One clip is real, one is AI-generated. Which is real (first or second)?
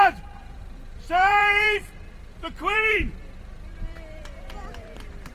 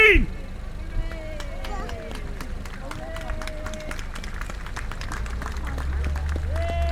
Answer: second